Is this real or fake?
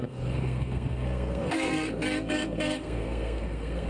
fake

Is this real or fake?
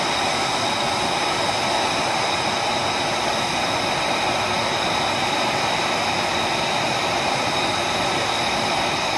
real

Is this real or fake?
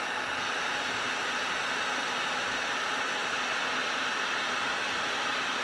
real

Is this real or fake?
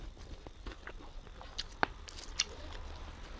real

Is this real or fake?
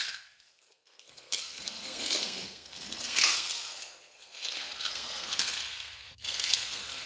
fake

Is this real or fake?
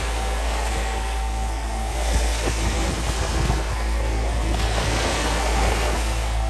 fake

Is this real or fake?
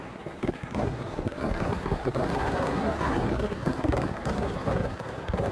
fake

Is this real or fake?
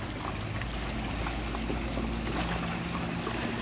real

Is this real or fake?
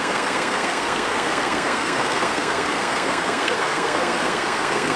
fake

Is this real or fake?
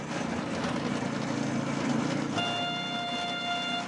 real